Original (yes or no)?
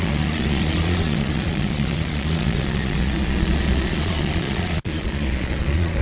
no